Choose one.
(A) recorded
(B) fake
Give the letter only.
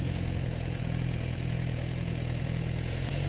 B